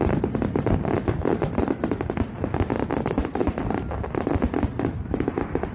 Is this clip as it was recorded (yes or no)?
yes